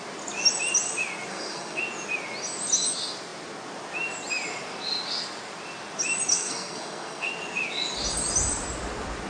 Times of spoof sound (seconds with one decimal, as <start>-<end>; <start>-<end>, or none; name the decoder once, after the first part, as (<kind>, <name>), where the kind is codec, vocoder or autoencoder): 1.3-1.8 (codec, SNAC); 6.3-7.3